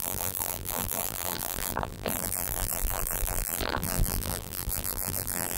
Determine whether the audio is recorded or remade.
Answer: remade